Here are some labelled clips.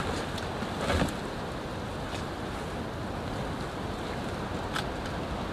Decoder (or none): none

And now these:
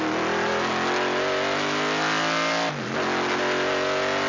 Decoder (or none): none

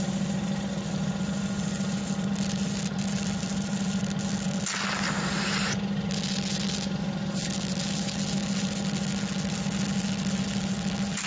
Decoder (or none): none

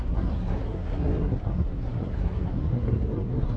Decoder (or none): codec, SNAC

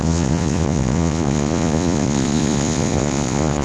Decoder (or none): vocoder, Vocos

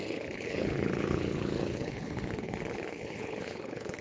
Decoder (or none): codec, HILCodec